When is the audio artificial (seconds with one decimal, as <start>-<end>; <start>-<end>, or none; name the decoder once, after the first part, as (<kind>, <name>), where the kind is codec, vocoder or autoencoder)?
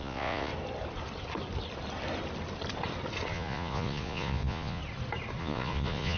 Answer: 0.0-0.5 (vocoder, Vocos); 3.3-4.8; 5.4-6.2